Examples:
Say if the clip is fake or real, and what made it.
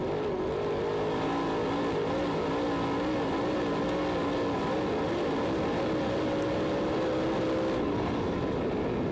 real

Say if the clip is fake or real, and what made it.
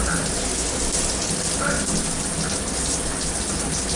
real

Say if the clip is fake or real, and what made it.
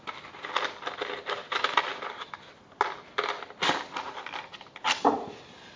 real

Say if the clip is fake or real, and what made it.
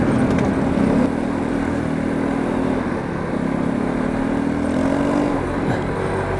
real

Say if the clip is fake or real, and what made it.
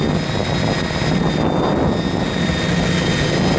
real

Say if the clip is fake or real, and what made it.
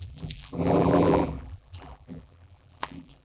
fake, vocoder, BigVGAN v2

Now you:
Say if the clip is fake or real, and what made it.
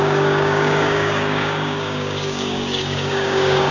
fake, codec, DAC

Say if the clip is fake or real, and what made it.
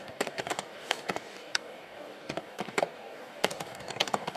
fake, codec, DAC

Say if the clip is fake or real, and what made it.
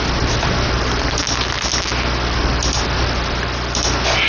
real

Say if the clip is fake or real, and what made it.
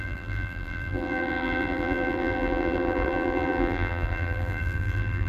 fake, vocoder, BigVGAN v2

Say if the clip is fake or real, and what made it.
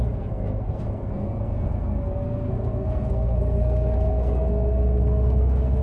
fake, codec, SNAC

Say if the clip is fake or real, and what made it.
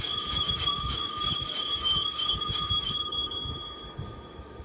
fake, codec, DAC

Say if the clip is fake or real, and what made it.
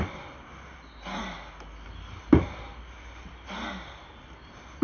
real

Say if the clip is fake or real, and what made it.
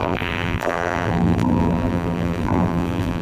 fake, vocoder, BigVGAN v2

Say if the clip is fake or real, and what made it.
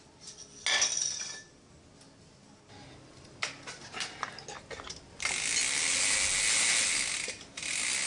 real